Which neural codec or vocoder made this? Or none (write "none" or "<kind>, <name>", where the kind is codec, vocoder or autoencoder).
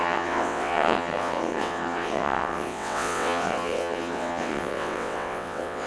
vocoder, WaveNeXt